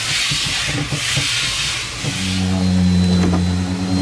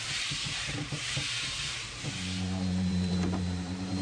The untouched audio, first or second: first